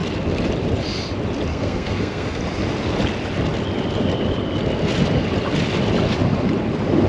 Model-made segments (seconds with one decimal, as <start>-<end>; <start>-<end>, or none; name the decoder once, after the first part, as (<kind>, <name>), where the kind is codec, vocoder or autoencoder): 1.5-2.4 (codec, SNAC)